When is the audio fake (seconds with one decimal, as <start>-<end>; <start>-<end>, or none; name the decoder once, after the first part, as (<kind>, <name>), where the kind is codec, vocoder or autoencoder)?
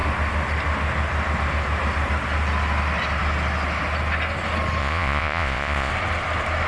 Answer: 4.8-5.9 (vocoder, Vocos)